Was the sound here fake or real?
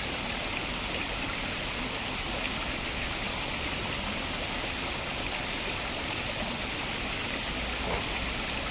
real